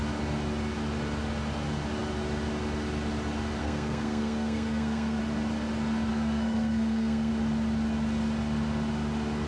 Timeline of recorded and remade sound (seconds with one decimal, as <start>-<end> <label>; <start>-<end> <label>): 0.0-3.6 recorded; 3.6-5.2 remade; 5.2-6.1 recorded; 6.1-7.3 remade; 7.3-9.5 recorded